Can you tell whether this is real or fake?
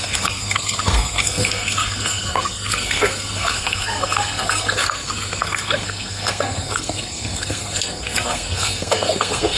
fake